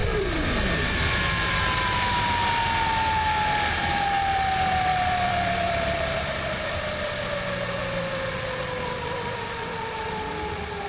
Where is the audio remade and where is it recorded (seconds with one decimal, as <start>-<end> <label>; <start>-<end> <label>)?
0.0-1.2 remade; 1.2-4.9 recorded; 4.9-6.7 remade; 6.7-10.9 recorded